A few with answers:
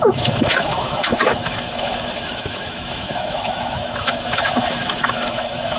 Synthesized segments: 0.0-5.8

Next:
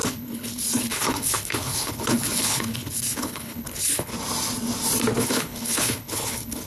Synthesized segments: 0.0-4.1; 5.2-6.7

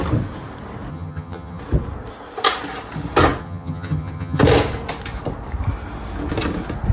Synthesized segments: 0.9-1.6; 3.4-4.4

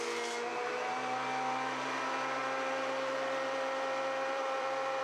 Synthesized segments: 0.5-2.0; 2.4-5.0

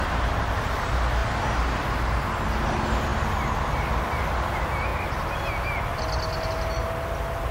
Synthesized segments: none

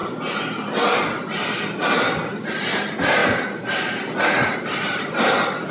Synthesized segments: 2.7-3.2; 4.2-5.7

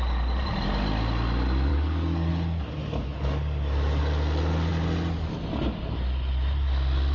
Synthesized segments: 1.7-2.3; 2.8-4.0

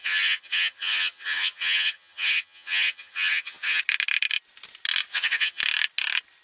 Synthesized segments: 0.0-3.8; 5.1-5.6